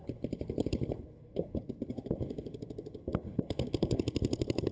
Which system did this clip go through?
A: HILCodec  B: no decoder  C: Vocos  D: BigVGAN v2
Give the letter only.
A